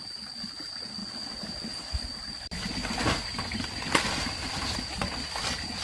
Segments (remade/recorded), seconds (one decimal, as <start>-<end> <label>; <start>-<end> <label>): 0.0-5.8 recorded